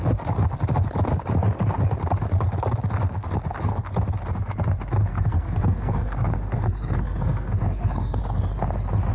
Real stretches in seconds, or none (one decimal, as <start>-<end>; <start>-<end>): 0.0-5.1; 8.2-9.1